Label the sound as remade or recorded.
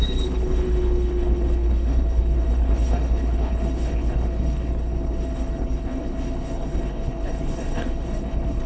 remade